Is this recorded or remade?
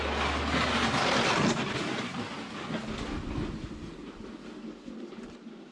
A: recorded